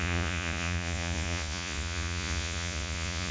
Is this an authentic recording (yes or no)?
no